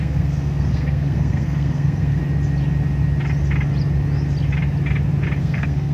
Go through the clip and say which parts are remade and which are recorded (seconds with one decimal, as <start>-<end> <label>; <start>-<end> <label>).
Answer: 0.0-2.2 remade; 2.2-5.4 recorded; 5.4-5.9 remade